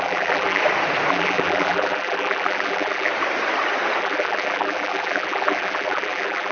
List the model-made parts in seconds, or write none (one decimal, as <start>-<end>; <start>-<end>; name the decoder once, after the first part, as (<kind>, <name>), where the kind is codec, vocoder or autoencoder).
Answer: 0.0-0.6 (vocoder, BigVGAN v2); 1.1-3.1; 4.0-6.5